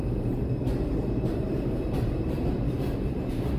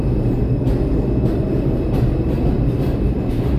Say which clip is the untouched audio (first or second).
second